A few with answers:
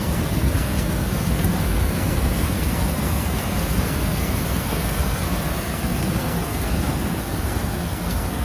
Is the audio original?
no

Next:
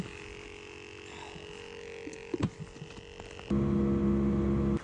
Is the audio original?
yes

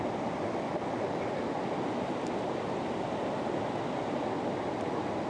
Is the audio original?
yes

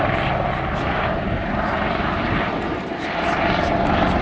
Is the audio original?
yes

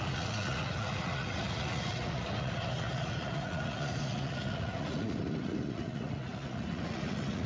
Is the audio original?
no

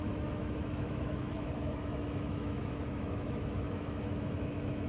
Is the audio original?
no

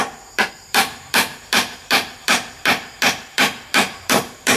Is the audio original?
no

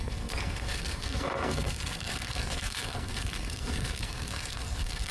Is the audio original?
no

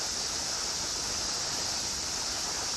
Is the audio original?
yes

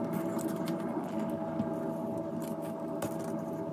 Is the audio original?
yes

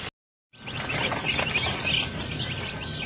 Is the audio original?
yes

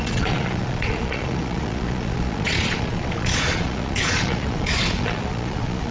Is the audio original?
no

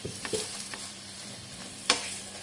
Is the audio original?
no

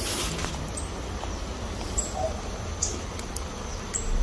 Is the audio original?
yes